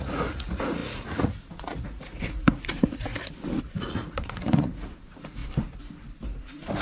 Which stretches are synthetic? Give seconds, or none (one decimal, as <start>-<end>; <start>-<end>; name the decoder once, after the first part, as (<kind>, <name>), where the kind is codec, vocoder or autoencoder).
0.0-3.1 (vocoder, Vocos); 3.6-5.4